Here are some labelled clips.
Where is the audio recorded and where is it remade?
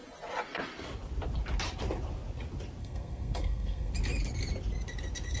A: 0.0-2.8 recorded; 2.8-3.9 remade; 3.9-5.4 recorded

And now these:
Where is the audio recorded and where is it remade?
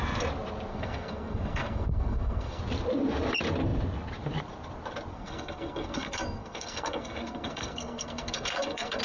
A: 0.0-0.7 recorded; 0.7-2.6 remade; 2.6-5.1 recorded; 5.1-9.0 remade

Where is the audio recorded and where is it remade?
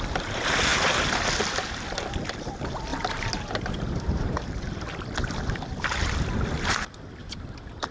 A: 0.0-2.9 recorded; 2.9-4.5 remade; 4.5-7.2 recorded; 7.2-7.9 remade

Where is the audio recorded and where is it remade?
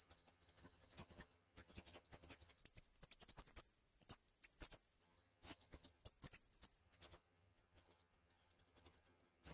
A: 0.0-2.6 remade; 2.6-5.0 recorded; 5.0-6.0 remade; 6.0-6.8 recorded; 6.8-9.5 remade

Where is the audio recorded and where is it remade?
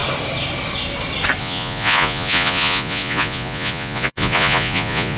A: 0.0-1.4 recorded; 1.4-5.2 remade